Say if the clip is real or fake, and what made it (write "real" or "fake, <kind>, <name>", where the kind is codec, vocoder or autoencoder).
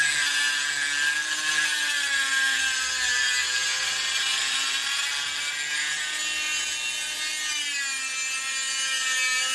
real